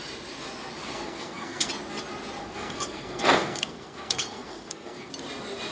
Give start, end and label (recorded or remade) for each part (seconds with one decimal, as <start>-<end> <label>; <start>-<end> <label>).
0.0-0.8 recorded; 0.8-1.7 remade; 1.7-2.4 recorded; 2.4-5.1 remade; 5.1-5.7 recorded